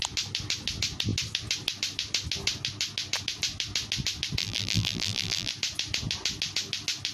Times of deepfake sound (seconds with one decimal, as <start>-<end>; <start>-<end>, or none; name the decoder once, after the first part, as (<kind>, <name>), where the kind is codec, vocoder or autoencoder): 4.4-5.5 (vocoder, BigVGAN v2)